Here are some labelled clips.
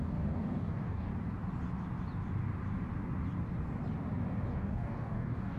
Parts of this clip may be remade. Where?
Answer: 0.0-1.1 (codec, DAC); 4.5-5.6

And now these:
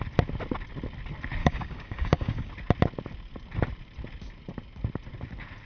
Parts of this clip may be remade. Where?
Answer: 1.4-2.5 (codec, DAC)

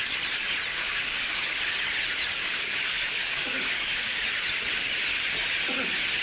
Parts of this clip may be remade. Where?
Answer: 0.7-1.6 (codec, DAC); 2.4-4.2

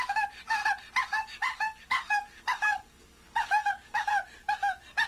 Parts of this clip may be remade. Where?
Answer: 1.0-4.1 (codec, DAC)

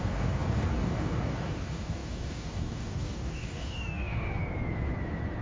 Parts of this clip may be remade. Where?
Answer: 0.0-4.4 (codec, DAC)